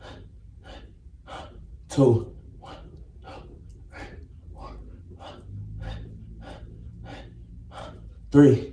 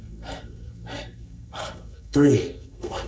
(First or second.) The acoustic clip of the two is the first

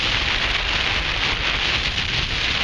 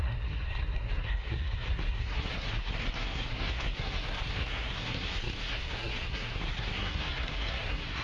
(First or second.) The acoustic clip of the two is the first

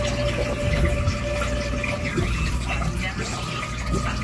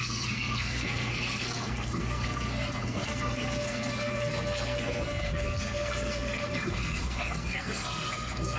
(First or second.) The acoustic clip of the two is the first